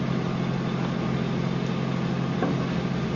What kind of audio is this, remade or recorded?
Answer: recorded